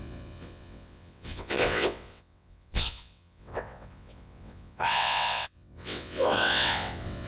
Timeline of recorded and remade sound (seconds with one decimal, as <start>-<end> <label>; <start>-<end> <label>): 0.0-7.3 remade

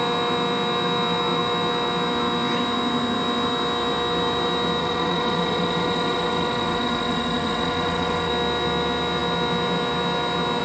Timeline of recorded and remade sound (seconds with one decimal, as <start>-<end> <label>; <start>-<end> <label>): 0.0-4.8 recorded; 4.8-8.3 remade; 8.3-10.6 recorded